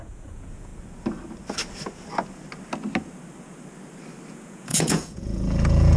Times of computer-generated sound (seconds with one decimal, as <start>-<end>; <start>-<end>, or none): 0.0-0.7; 4.3-6.0